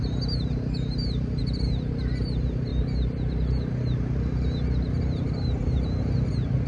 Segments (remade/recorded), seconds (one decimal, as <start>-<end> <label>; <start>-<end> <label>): 0.0-6.7 recorded